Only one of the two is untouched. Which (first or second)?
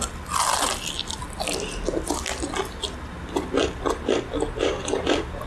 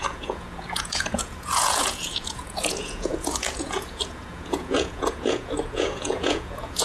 first